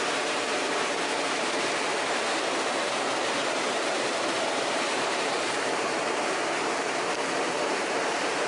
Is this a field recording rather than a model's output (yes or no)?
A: no